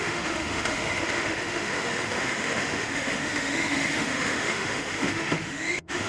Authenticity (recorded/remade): remade